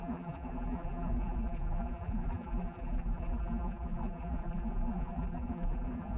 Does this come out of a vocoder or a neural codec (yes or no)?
yes